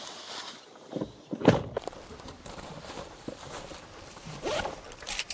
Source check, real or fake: fake